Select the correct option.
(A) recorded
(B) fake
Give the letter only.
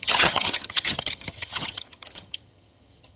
B